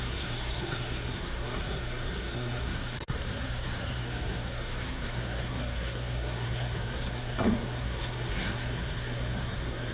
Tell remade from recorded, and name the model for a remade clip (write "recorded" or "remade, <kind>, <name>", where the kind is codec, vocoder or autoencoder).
remade, codec, SNAC